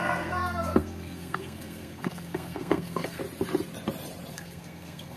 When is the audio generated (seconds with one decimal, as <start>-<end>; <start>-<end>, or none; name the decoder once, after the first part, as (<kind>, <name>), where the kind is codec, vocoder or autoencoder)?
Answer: 0.0-3.2 (codec, SNAC); 4.3-5.2